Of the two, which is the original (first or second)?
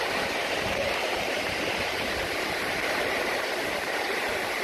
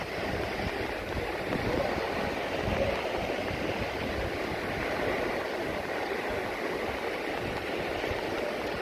second